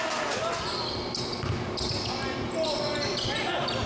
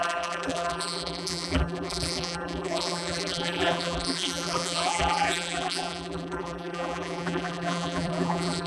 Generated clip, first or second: second